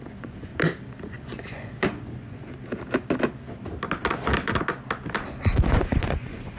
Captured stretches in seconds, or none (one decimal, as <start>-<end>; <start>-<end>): 0.5-1.1; 2.5-5.4